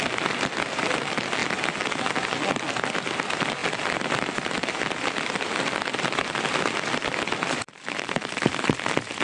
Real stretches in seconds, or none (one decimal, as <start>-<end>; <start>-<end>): 0.0-9.2